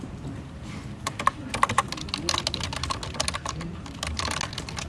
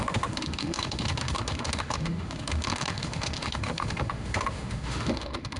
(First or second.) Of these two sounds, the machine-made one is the second